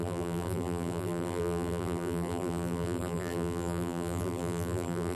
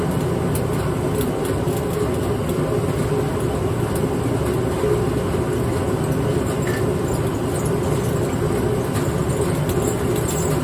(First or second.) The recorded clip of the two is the second